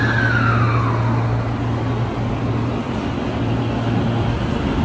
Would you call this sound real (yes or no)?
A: yes